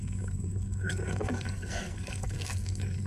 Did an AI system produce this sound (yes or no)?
yes